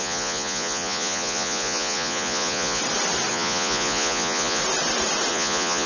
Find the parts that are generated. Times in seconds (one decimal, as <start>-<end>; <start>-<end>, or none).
0.0-2.8; 3.3-4.6; 5.3-5.9